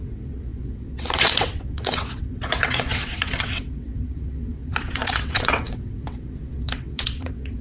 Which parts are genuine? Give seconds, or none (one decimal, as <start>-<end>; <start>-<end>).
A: none